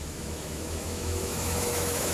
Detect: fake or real fake